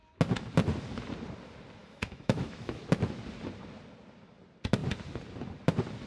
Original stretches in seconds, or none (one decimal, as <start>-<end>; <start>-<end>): 0.0-1.8; 2.8-6.1